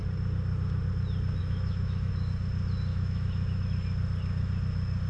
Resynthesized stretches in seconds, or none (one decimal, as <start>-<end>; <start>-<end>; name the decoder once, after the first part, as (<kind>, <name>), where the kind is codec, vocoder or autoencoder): 1.4-2.1 (autoencoder, DAC-VAE); 2.9-3.6